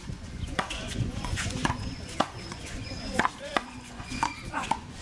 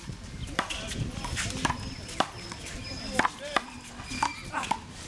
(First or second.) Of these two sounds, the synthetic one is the first